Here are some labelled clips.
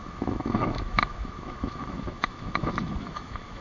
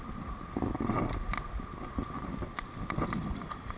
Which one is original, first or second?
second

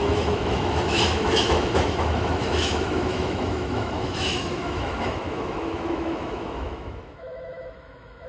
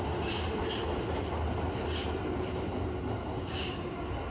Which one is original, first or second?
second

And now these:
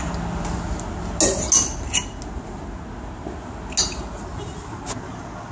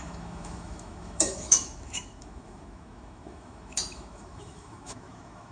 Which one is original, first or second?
first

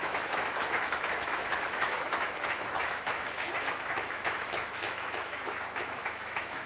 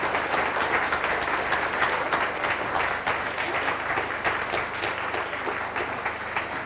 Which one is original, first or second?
second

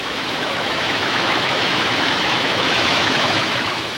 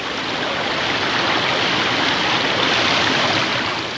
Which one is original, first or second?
second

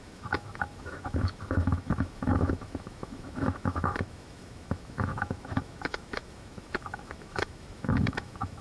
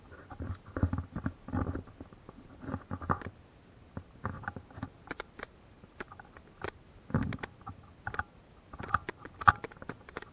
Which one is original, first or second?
second